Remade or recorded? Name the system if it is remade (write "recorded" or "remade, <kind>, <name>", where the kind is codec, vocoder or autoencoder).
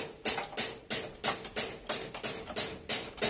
recorded